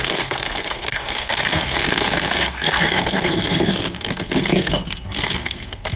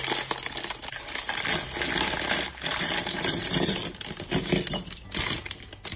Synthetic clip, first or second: first